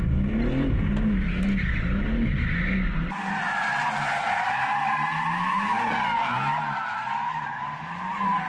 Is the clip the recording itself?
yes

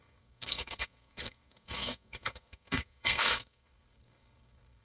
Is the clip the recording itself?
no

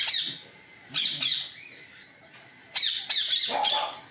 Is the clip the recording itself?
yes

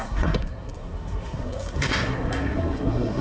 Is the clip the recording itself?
no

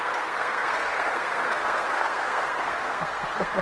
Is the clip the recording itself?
no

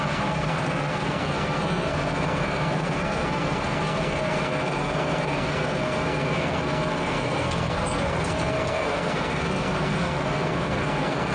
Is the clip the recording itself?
no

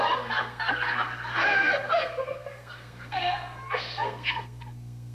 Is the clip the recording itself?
no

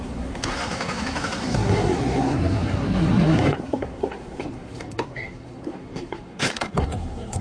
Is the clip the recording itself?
no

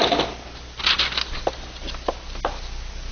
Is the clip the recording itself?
yes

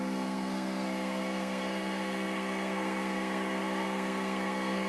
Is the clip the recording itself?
no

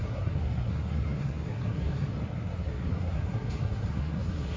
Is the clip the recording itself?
no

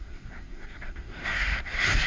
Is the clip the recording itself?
no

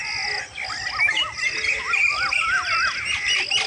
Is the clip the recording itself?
yes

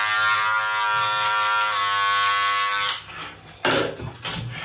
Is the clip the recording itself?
yes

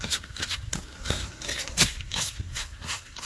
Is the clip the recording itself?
no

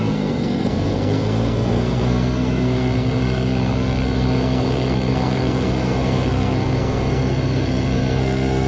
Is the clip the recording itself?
no